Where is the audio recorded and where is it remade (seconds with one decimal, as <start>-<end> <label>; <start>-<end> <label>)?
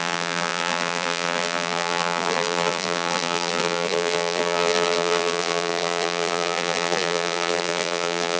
0.0-8.4 remade